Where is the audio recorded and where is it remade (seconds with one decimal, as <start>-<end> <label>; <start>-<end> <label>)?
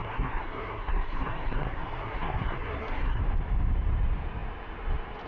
0.0-3.2 remade; 3.2-5.3 recorded